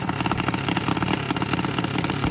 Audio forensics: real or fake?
real